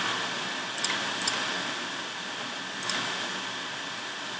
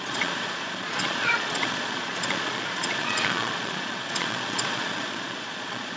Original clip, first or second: first